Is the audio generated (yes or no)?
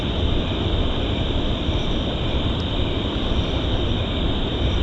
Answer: no